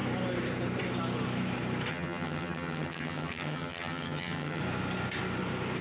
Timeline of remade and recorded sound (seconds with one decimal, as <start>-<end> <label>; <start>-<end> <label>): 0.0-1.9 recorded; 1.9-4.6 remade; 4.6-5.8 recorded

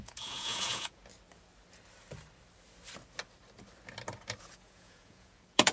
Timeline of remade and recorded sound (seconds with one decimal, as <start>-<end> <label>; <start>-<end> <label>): 0.0-1.0 remade; 1.0-4.4 recorded; 4.4-5.7 remade

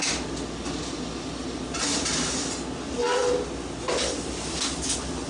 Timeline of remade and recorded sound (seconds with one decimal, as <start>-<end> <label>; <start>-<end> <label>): 0.0-5.3 recorded

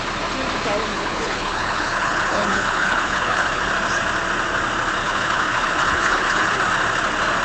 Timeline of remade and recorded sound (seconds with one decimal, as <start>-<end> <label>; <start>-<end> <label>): 0.0-0.9 recorded; 0.9-3.7 remade; 3.7-5.0 recorded; 5.0-6.6 remade; 6.6-7.4 recorded

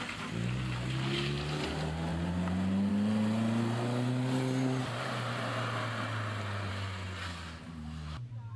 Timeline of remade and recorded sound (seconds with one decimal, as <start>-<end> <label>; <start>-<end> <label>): 0.0-8.6 recorded

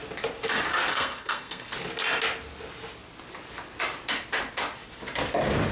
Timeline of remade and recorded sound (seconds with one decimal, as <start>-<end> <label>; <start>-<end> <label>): 0.0-0.9 recorded; 0.9-1.7 remade; 1.7-5.7 recorded